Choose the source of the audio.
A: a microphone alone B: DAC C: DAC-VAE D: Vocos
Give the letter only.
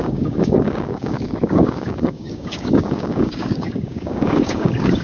B